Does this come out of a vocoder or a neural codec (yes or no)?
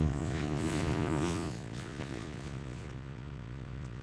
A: yes